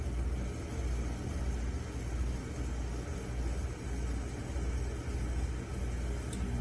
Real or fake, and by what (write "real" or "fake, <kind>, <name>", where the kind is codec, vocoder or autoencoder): real